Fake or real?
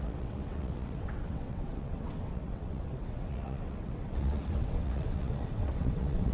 fake